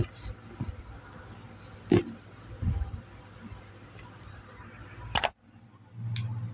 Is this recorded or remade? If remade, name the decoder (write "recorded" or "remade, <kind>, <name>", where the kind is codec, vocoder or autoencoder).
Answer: recorded